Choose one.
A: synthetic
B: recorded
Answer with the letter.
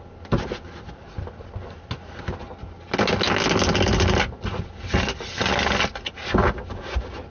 B